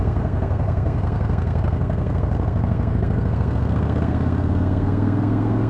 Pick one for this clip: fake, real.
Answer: fake